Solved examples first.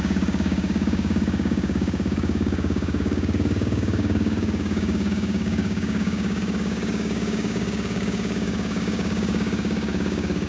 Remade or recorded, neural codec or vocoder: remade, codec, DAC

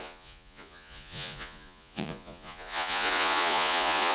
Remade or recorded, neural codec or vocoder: remade, vocoder, Vocos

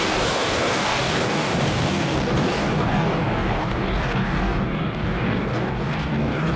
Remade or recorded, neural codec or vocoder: remade, codec, DAC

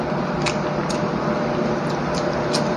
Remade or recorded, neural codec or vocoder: recorded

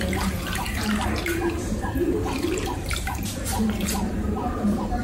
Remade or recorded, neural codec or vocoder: remade, vocoder, BigVGAN v2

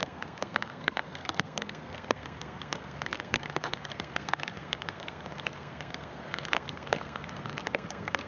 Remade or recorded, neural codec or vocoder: remade, codec, SNAC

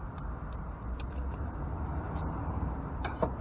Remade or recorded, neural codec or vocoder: remade, vocoder, BigVGAN v2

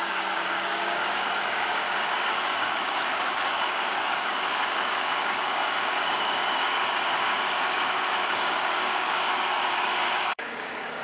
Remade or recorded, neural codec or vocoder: remade, codec, DAC